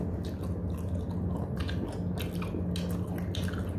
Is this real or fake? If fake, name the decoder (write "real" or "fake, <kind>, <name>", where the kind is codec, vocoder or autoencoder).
real